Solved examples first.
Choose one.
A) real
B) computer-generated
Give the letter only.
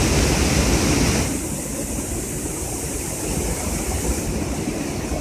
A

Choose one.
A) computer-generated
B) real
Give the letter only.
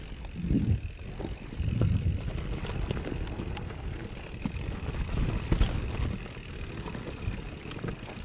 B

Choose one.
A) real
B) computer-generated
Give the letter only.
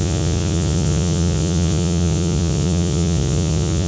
B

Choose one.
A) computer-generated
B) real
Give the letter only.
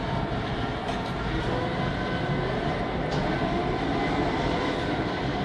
B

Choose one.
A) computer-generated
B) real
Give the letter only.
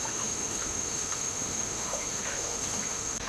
A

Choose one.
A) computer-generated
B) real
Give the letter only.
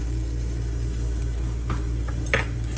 B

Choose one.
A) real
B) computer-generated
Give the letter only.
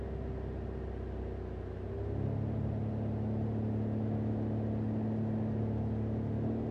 A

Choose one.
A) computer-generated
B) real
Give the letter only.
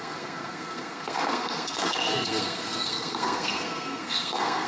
A